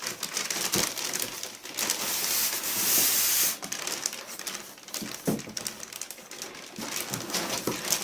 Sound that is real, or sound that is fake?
real